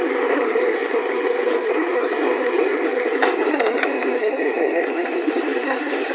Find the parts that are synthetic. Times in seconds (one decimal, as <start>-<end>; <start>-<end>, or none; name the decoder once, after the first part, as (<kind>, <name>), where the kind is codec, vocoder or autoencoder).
0.0-6.1 (codec, SNAC)